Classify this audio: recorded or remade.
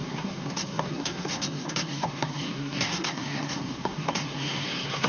remade